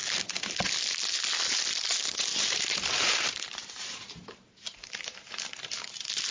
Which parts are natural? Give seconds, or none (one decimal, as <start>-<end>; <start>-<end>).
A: 0.0-2.3